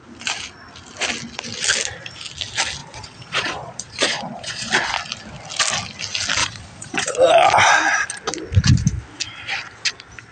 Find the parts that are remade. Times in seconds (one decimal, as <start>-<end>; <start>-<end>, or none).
2.8-4.7; 6.4-7.3